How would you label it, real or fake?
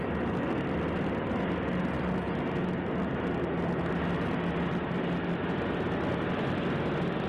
real